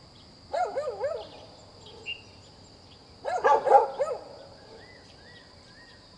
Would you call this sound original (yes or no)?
yes